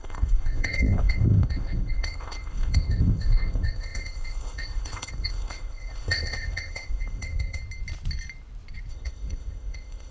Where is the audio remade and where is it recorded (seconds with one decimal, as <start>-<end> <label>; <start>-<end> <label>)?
0.0-7.6 remade; 7.6-8.9 recorded; 8.9-10.1 remade